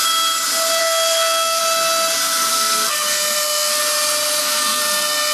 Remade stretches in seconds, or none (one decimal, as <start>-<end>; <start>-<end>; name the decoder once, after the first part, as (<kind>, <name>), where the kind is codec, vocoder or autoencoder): 0.8-1.6 (codec, SNAC); 2.5-3.8; 4.4-5.3